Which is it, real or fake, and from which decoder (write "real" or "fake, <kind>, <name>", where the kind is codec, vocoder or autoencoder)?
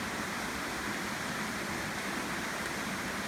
real